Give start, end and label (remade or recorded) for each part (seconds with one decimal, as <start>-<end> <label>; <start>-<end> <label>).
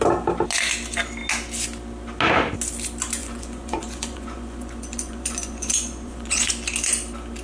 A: 0.0-3.2 recorded; 3.2-6.5 remade; 6.5-7.4 recorded